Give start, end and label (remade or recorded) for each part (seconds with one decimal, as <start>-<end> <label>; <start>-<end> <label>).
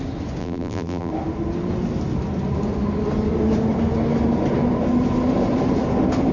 0.0-0.4 recorded; 0.4-1.1 remade; 1.1-6.3 recorded